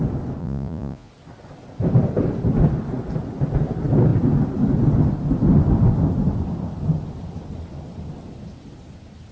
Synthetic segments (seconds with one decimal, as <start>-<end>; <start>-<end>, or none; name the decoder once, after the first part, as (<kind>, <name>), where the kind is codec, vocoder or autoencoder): 0.4-1.1 (vocoder, Vocos)